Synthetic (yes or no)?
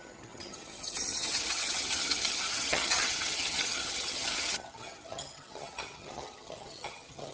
yes